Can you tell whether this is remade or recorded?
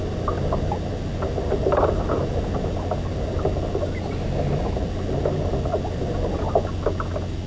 recorded